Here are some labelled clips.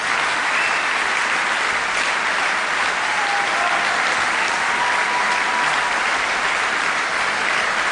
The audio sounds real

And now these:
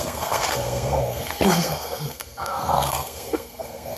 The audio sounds fake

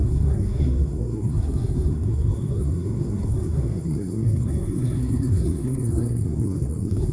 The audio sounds fake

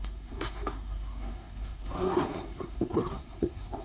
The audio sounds fake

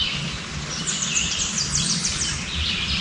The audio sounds real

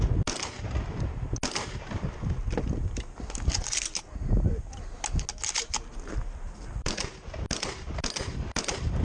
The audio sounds real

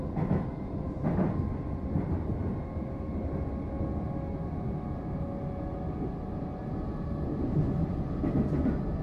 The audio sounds real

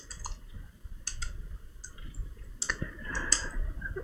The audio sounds real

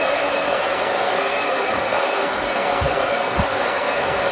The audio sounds fake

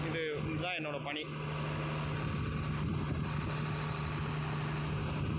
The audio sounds real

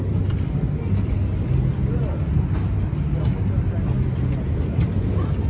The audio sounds real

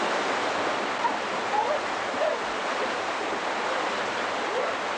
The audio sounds real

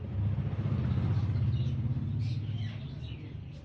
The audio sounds real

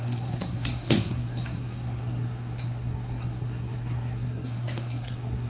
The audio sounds fake